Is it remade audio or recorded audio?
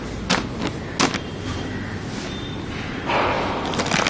recorded